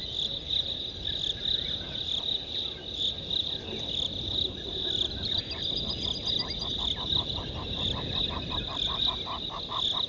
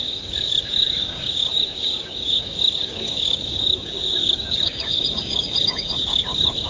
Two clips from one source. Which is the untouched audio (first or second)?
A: first